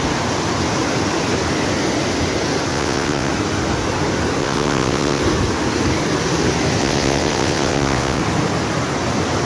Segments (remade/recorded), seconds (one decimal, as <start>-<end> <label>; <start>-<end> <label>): 0.0-2.7 recorded; 2.7-3.3 remade; 3.3-4.4 recorded; 4.4-5.2 remade; 5.2-6.8 recorded; 6.8-8.2 remade; 8.2-9.5 recorded